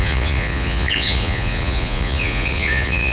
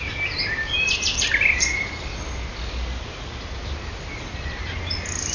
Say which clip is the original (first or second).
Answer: second